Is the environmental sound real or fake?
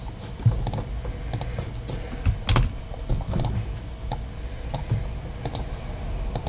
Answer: real